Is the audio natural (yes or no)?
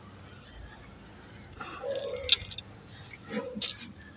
yes